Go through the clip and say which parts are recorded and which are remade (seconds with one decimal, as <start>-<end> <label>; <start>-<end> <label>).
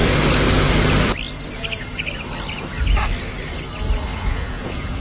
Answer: 0.0-4.1 recorded; 4.1-5.0 remade